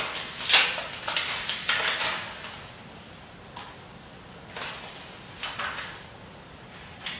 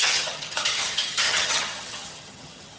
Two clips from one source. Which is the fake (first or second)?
second